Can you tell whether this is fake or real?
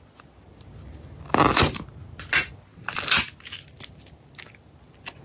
real